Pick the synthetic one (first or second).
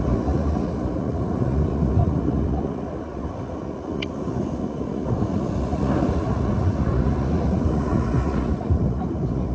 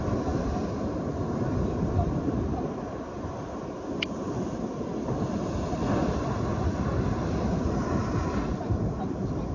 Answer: first